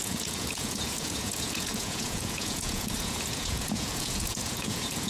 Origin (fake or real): fake